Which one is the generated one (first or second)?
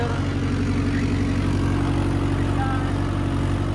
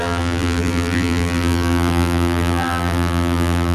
second